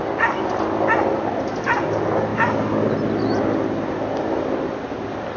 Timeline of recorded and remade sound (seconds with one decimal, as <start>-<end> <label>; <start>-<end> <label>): 0.0-5.4 recorded

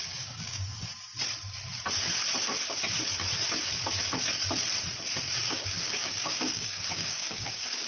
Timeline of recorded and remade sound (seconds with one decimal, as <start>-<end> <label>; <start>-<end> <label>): 0.0-0.9 remade; 0.9-5.4 recorded; 5.4-7.9 remade

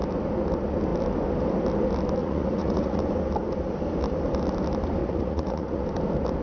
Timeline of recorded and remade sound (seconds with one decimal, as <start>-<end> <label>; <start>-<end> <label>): 0.0-2.2 recorded; 2.2-3.0 remade; 3.0-5.0 recorded; 5.0-5.8 remade; 5.8-6.4 recorded